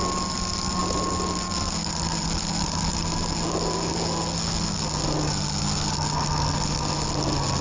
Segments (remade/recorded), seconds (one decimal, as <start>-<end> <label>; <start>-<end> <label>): 0.0-7.6 recorded